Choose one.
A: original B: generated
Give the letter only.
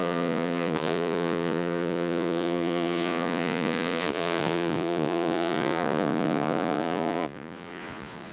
B